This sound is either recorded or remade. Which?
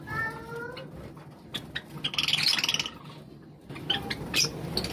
recorded